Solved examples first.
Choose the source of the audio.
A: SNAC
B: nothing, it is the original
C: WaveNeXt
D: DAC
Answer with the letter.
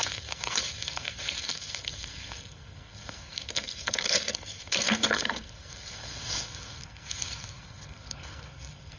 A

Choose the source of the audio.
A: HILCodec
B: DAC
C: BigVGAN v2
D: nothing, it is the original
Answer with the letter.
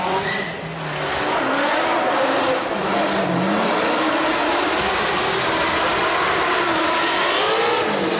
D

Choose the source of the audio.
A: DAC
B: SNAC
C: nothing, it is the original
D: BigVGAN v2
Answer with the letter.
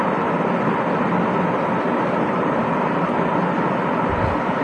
C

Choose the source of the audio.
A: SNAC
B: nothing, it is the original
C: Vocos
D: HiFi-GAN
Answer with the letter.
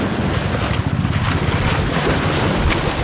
B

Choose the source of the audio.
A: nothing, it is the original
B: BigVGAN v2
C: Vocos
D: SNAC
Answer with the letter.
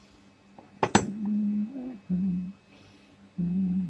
A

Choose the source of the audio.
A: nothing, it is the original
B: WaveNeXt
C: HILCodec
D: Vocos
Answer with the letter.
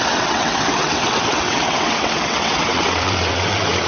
B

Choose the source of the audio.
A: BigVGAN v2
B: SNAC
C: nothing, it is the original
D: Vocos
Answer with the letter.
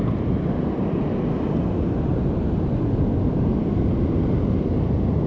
C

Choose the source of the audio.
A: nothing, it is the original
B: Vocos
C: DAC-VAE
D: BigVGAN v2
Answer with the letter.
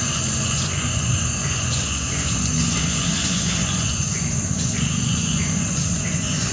B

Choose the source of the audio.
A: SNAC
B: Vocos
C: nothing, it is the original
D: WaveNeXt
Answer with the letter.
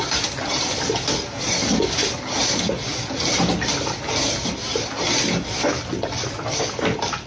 C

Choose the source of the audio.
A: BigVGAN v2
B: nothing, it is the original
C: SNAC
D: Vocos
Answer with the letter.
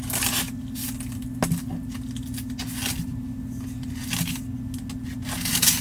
B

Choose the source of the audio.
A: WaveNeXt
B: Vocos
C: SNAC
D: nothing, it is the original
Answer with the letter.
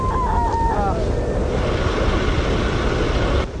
D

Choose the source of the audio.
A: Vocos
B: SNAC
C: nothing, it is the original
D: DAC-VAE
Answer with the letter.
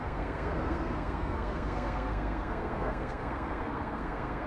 B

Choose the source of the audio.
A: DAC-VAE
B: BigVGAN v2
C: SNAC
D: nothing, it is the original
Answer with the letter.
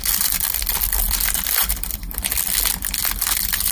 D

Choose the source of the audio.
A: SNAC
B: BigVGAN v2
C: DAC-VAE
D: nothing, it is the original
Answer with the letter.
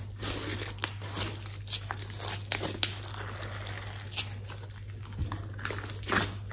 D